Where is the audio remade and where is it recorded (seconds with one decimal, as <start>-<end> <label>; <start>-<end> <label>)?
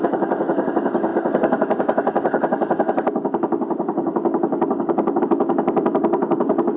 0.0-6.8 remade